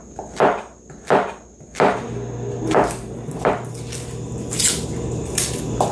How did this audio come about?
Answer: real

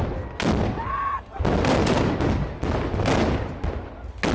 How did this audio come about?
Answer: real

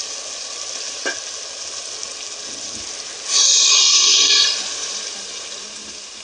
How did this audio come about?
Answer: real